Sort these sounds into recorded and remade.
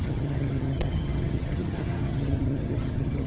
remade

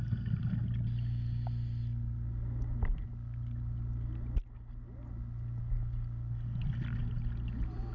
recorded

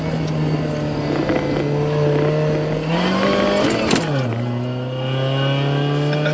recorded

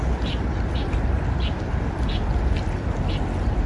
recorded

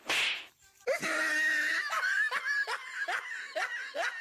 recorded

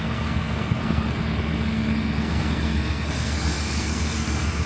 remade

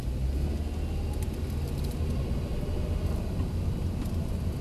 recorded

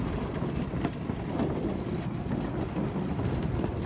recorded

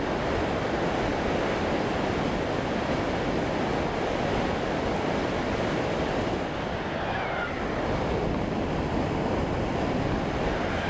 recorded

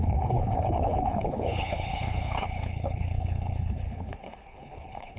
remade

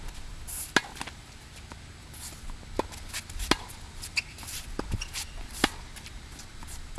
recorded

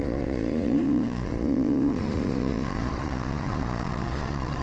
remade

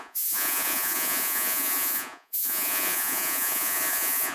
remade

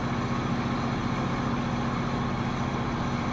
recorded